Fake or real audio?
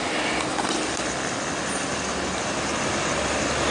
real